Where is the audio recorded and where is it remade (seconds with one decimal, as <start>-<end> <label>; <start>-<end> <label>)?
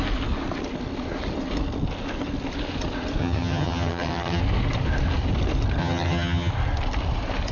0.0-3.2 recorded; 3.2-4.4 remade; 4.4-5.8 recorded; 5.8-6.5 remade; 6.5-7.5 recorded